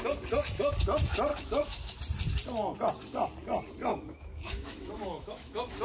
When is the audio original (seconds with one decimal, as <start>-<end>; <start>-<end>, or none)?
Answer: 0.0-1.3; 2.0-3.9